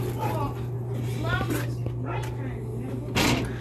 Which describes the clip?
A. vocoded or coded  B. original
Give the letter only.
B